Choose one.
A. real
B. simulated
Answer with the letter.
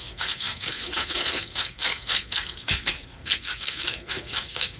B